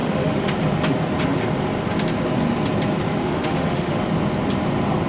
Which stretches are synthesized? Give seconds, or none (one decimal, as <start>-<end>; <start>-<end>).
0.0-0.5; 3.1-4.0